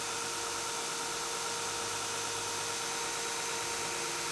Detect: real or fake real